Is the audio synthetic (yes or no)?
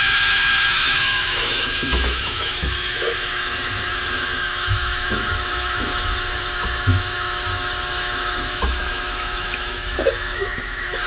yes